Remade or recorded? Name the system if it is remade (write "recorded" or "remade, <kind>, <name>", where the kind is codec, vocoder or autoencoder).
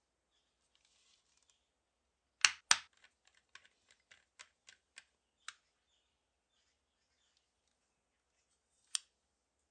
recorded